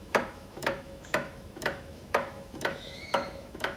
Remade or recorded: remade